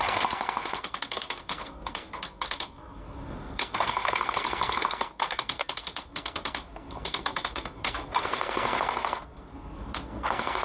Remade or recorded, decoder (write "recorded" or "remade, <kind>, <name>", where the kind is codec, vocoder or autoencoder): remade, codec, SNAC